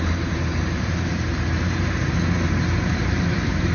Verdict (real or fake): fake